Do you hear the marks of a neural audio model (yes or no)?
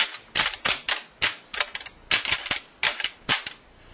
no